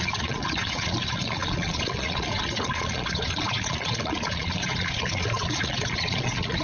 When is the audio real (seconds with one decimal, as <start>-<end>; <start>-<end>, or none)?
none